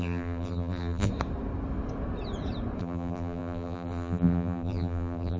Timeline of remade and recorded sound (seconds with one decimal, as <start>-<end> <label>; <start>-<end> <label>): 0.0-1.1 remade; 1.1-2.8 recorded; 2.8-5.4 remade